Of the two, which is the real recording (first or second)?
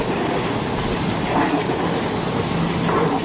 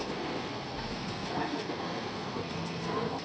first